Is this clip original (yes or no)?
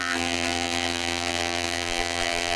no